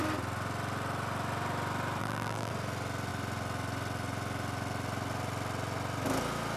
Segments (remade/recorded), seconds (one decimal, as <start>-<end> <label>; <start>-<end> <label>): 0.0-2.0 recorded; 2.0-2.5 remade; 2.5-6.6 recorded

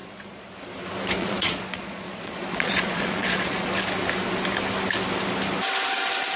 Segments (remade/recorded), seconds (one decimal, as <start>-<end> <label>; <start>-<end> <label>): 0.0-0.5 remade; 0.5-1.2 recorded; 1.2-3.7 remade; 3.7-6.4 recorded

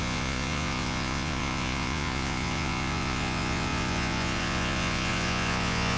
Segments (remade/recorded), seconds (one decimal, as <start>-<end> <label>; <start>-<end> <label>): 0.0-6.0 remade

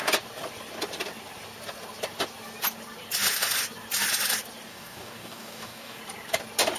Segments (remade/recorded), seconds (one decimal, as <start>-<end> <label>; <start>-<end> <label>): 0.0-4.7 recorded; 4.7-6.0 remade; 6.0-6.8 recorded

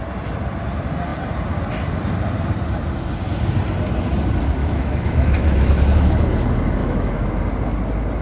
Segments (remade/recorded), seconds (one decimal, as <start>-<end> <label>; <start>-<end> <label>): 0.0-4.6 recorded; 4.6-6.2 remade; 6.2-6.8 recorded; 6.8-7.4 remade; 7.4-8.2 recorded

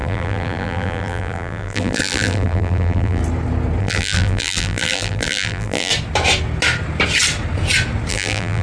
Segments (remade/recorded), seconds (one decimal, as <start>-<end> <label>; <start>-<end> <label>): 0.0-3.2 remade; 3.2-3.8 recorded; 3.8-5.9 remade; 5.9-8.1 recorded; 8.1-8.6 remade

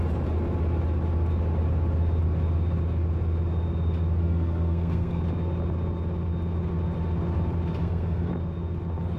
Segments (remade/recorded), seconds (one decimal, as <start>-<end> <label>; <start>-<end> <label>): 0.0-4.2 recorded; 4.2-5.2 remade; 5.2-7.8 recorded; 7.8-8.3 remade; 8.3-9.2 recorded

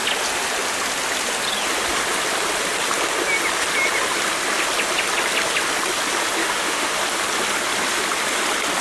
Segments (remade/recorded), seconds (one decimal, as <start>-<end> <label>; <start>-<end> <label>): 0.0-6.4 recorded; 6.4-7.0 remade; 7.0-8.8 recorded